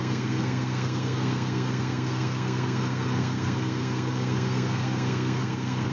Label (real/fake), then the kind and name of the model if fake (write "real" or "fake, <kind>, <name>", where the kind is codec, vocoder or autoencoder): fake, codec, SNAC